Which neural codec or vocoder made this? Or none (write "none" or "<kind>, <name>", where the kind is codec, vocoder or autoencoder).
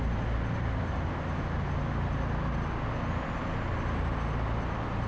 none